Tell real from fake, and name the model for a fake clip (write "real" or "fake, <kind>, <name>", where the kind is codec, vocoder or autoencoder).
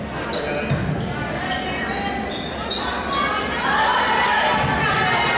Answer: real